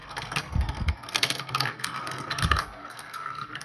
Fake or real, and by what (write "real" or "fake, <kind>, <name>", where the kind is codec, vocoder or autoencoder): fake, codec, SNAC